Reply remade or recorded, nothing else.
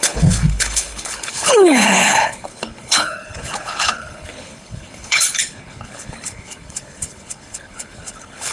remade